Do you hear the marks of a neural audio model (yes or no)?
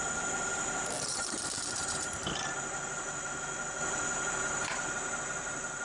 no